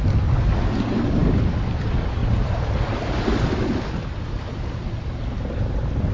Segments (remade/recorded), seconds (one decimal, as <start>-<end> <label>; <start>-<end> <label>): 0.0-6.1 recorded